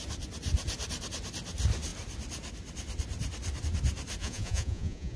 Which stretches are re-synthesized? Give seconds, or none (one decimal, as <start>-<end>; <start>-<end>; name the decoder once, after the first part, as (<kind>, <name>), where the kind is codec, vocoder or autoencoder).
4.2-5.2 (vocoder, Vocos)